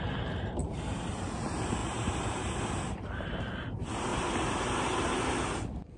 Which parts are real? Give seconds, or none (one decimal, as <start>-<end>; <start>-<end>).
0.0-0.6; 1.1-1.8; 3.5-4.1; 5.1-6.0